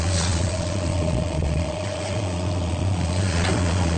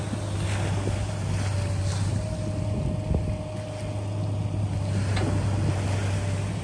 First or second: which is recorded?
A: second